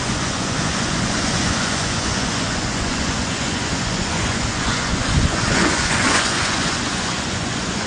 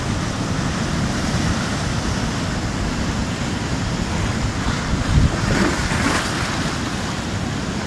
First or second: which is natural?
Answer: second